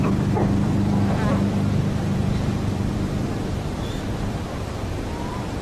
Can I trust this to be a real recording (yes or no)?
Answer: no